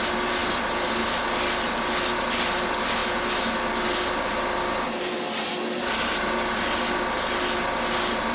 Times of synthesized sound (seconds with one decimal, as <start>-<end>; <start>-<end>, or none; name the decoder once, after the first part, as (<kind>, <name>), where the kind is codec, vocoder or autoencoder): none